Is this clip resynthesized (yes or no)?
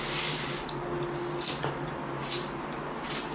no